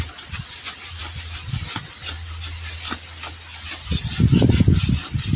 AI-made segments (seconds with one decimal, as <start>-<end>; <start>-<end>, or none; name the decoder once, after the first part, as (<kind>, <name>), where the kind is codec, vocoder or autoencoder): none